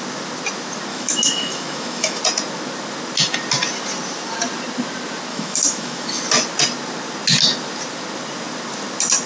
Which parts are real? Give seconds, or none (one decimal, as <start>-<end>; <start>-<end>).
0.0-0.9; 2.2-5.3; 6.2-9.3